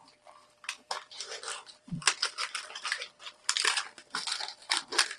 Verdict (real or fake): real